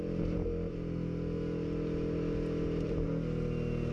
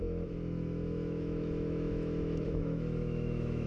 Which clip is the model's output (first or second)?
second